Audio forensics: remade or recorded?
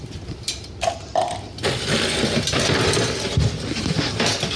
recorded